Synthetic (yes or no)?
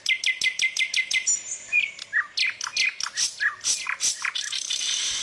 no